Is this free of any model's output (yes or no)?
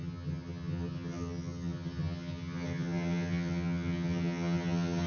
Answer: no